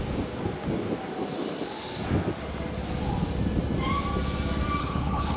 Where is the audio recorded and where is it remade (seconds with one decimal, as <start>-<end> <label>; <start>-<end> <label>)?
0.0-4.8 recorded; 4.8-5.4 remade